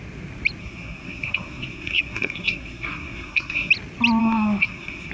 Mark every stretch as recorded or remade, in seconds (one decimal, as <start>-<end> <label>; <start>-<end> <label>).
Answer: 0.0-0.6 recorded; 0.6-3.7 remade; 3.7-4.2 recorded; 4.2-5.1 remade